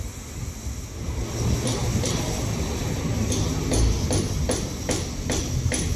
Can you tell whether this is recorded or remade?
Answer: recorded